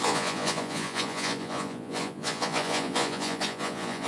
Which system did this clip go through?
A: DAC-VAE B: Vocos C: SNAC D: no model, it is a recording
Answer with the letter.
B